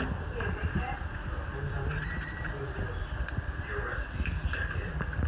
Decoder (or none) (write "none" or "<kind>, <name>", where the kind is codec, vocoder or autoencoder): none